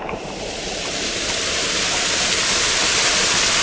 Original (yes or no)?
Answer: yes